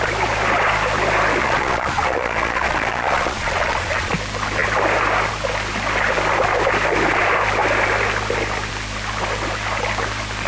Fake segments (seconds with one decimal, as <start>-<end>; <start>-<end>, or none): 1.4-4.1